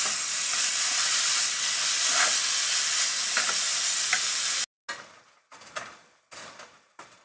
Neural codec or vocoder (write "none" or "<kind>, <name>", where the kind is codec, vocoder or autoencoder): none